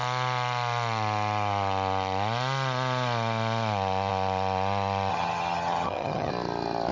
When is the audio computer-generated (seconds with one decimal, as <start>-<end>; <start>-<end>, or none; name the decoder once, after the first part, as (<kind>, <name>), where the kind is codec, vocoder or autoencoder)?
5.1-6.3 (vocoder, HiFi-GAN)